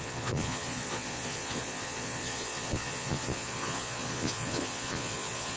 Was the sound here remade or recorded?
remade